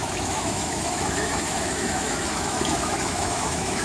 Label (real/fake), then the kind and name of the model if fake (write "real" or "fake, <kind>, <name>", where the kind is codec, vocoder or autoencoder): fake, autoencoder, DAC-VAE